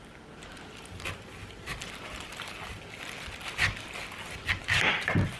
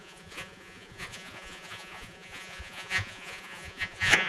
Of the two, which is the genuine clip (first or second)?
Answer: first